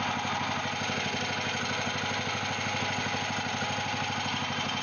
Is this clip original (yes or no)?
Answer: yes